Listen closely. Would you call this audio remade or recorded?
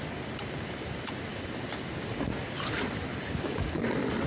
recorded